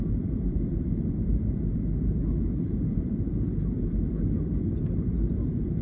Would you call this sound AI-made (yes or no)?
yes